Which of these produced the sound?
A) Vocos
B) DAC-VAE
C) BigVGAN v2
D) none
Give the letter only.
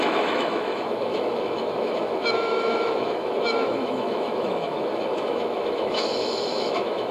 B